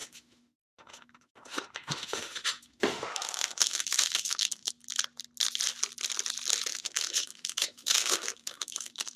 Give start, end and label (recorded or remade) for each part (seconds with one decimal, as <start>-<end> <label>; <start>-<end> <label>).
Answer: 0.0-4.7 remade; 4.7-6.7 recorded; 6.7-9.2 remade